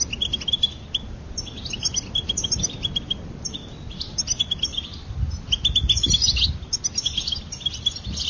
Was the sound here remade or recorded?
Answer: recorded